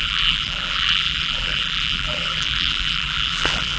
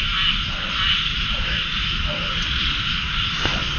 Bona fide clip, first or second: second